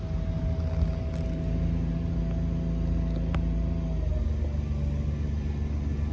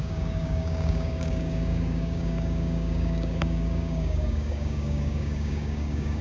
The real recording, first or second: first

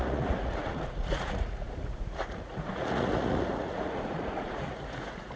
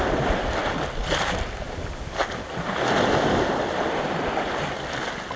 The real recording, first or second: second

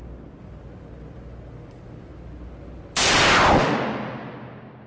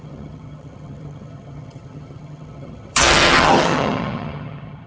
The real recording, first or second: first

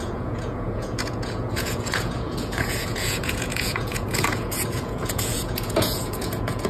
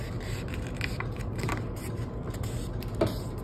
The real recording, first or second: second